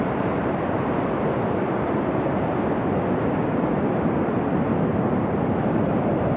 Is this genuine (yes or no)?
yes